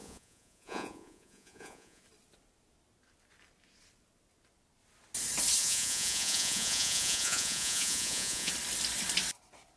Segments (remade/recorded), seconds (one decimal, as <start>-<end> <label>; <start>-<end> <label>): 0.0-2.0 remade; 2.0-5.6 recorded; 5.6-8.5 remade; 8.5-9.8 recorded